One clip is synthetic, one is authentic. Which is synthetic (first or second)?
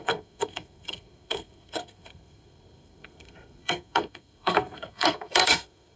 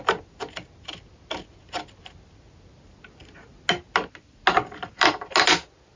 first